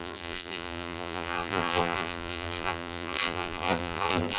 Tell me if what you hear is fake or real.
fake